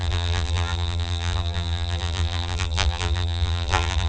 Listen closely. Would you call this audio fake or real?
fake